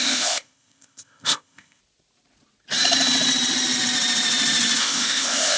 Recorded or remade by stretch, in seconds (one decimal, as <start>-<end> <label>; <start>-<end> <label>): 0.0-1.8 remade; 1.8-4.8 recorded; 4.8-5.6 remade